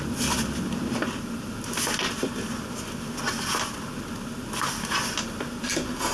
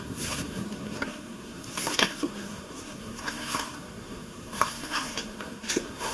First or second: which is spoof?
second